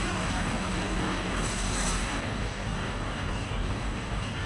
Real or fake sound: fake